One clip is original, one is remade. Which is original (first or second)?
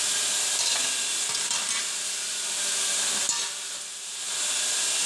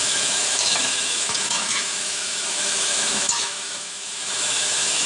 first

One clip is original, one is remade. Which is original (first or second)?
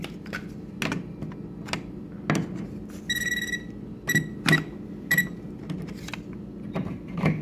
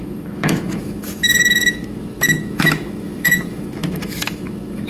first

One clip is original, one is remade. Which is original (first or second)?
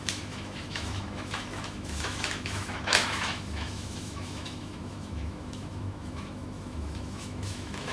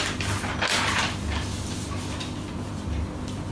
second